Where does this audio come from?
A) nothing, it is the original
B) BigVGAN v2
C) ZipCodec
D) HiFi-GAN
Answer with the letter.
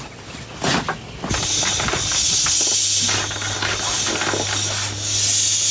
A